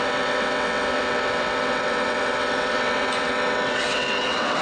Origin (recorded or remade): remade